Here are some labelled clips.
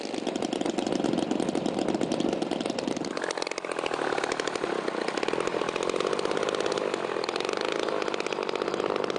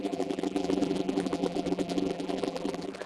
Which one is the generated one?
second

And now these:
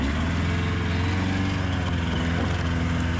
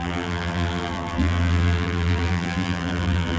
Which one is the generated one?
second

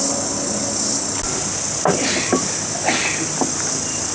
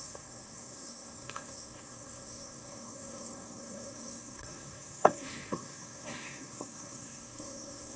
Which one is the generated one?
second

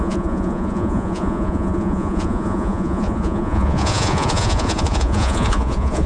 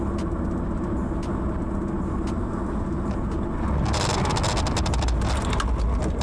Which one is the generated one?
first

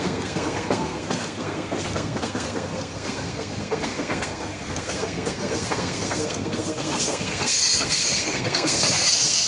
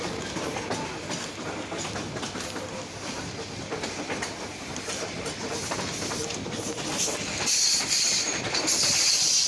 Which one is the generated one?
first